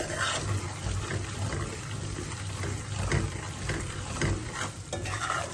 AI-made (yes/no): no